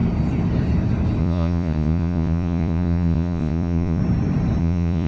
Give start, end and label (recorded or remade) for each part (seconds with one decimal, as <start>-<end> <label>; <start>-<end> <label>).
0.0-1.2 recorded; 1.2-4.0 remade; 4.0-4.6 recorded; 4.6-5.1 remade